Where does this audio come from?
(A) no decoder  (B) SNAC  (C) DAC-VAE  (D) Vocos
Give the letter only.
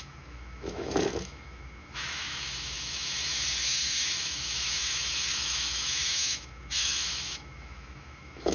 C